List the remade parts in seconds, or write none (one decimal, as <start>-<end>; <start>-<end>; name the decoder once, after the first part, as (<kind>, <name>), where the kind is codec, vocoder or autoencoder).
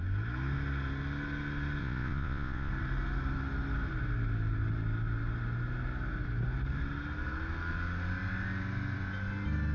1.8-2.7 (vocoder, Vocos)